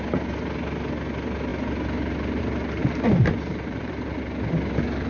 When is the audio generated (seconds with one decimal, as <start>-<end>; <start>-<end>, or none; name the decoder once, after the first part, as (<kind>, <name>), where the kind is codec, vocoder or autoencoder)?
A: 2.8-4.2 (vocoder, BigVGAN v2)